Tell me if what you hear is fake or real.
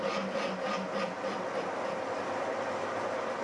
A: real